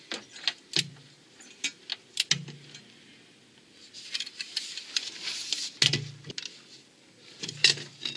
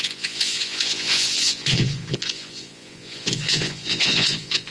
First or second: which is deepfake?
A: second